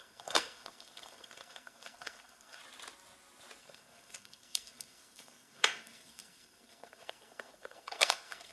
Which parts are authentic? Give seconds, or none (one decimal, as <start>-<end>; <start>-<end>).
2.6-3.6